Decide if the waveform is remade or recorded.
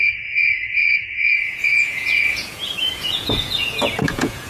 remade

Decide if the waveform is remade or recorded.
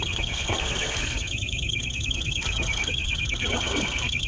remade